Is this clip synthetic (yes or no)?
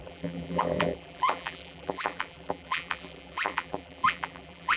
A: yes